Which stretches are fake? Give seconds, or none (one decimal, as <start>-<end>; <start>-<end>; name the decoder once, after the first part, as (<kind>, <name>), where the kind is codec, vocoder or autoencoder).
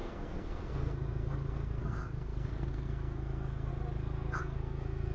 0.0-3.7 (codec, SNAC); 4.4-5.1